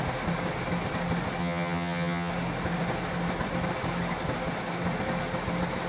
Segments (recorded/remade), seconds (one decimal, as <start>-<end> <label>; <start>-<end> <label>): 0.0-1.4 recorded; 1.4-2.3 remade; 2.3-5.9 recorded